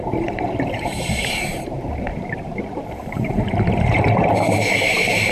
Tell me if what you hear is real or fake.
fake